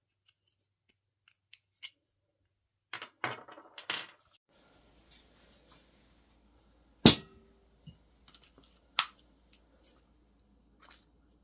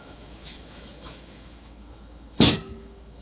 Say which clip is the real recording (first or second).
first